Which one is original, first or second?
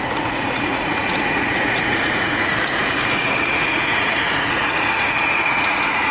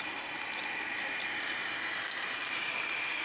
second